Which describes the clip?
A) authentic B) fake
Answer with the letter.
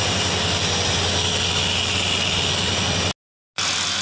A